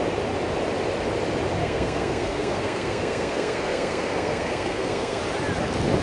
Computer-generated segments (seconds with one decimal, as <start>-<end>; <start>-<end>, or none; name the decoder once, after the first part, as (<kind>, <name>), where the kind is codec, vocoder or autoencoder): 1.6-5.2 (codec, SNAC)